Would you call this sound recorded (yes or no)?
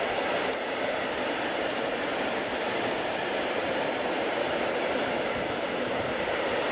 no